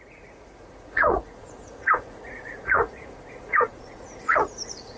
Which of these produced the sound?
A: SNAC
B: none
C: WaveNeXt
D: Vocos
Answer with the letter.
D